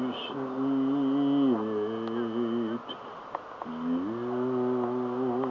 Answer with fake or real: real